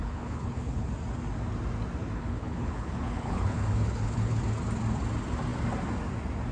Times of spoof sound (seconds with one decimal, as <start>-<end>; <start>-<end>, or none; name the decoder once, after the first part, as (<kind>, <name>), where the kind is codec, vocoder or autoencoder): 0.0-0.9 (codec, HILCodec); 2.0-4.4